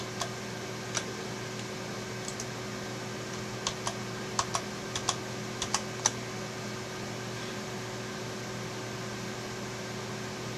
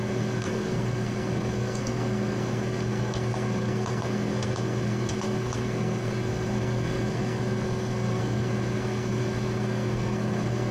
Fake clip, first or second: second